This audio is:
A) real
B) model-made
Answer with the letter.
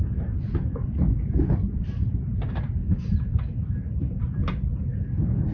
A